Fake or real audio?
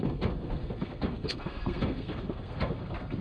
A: fake